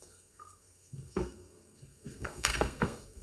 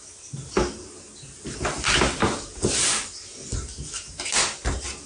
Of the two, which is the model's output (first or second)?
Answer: first